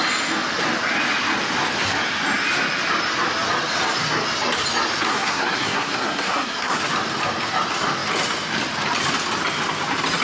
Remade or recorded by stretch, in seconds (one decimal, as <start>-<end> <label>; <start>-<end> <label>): 0.0-5.1 recorded; 5.1-6.8 remade; 6.8-10.2 recorded